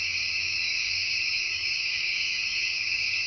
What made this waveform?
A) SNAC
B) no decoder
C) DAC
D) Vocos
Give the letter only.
C